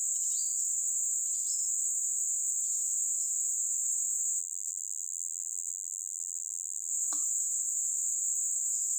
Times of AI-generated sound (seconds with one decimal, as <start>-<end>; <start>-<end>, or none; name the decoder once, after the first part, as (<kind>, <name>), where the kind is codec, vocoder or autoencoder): 4.4-6.9 (vocoder, BigVGAN v2)